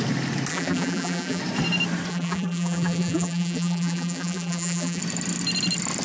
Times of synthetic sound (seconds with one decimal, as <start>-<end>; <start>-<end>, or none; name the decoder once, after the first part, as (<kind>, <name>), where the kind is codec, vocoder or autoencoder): 0.5-1.4 (vocoder, BigVGAN v2); 2.1-5.0

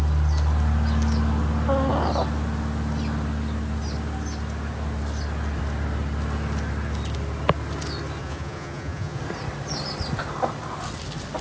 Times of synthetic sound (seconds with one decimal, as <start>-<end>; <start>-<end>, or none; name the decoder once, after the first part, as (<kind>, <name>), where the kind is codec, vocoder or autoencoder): 8.2-9.2 (vocoder, Vocos)